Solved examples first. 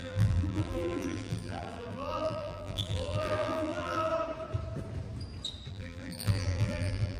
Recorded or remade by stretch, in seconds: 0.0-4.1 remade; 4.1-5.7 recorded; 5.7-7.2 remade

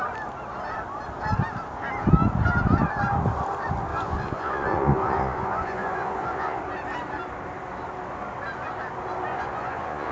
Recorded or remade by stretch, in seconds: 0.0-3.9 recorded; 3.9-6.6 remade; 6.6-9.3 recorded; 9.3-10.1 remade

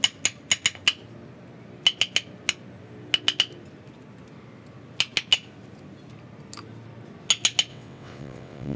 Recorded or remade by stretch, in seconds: 0.0-7.7 recorded; 7.7-8.8 remade

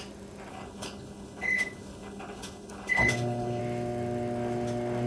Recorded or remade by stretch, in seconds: 0.0-0.5 recorded; 0.5-3.6 remade; 3.6-5.1 recorded

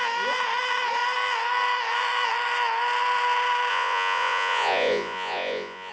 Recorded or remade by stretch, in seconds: 0.0-3.7 recorded; 3.7-5.9 remade

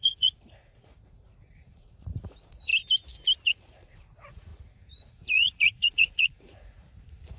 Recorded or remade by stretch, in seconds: 0.0-2.7 remade; 2.7-3.5 recorded; 3.5-7.4 remade